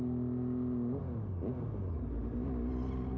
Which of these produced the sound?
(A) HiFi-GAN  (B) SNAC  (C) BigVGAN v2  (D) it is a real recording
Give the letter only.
D